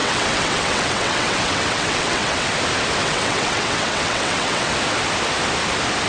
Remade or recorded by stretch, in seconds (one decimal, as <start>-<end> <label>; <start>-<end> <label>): 0.0-2.5 remade; 2.5-3.0 recorded; 3.0-4.7 remade; 4.7-6.1 recorded